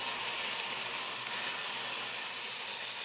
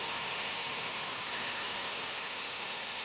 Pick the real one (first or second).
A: first